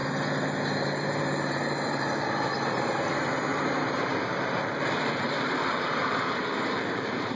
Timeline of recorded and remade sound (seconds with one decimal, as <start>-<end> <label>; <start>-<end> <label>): 0.0-1.2 recorded; 1.2-7.4 remade

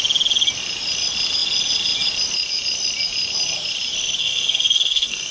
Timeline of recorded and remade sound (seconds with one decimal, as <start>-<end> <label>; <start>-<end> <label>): 0.0-4.2 recorded; 4.2-5.3 remade

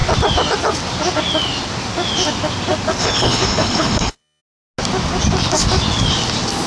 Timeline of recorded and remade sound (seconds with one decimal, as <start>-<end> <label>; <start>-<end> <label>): 0.0-3.0 recorded; 3.0-4.4 remade; 4.4-6.7 recorded

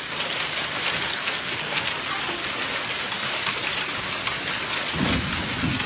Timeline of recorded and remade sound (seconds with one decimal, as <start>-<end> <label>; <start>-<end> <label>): 0.0-1.1 recorded; 1.1-1.9 remade; 1.9-5.9 recorded

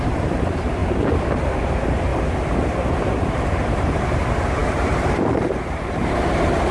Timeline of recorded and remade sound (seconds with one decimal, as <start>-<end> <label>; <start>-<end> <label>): 0.0-0.8 remade; 0.8-1.6 recorded; 1.6-2.1 remade; 2.1-2.6 recorded; 2.6-6.7 remade